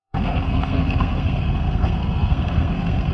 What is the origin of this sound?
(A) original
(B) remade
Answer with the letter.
B